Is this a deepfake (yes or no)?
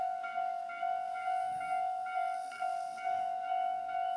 yes